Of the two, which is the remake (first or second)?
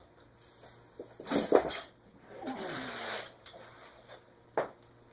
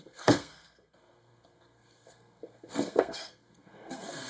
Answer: second